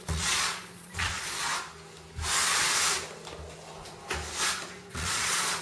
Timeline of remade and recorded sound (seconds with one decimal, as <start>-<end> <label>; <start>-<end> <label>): 0.0-1.5 remade; 1.5-4.9 recorded; 4.9-5.6 remade